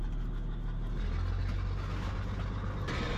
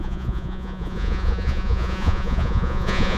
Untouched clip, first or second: first